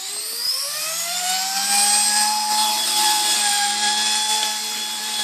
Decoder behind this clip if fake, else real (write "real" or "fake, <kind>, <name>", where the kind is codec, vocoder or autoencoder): fake, vocoder, BigVGAN v2